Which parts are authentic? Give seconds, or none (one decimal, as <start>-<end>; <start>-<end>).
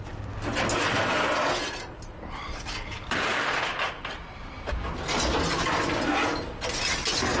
0.0-7.4